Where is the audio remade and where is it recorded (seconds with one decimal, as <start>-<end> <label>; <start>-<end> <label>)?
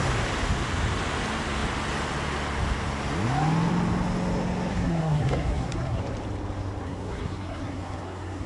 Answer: 0.0-4.7 recorded; 4.7-6.0 remade; 6.0-6.8 recorded; 6.8-8.5 remade